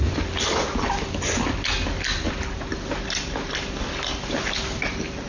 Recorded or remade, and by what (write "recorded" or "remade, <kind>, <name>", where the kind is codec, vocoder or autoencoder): recorded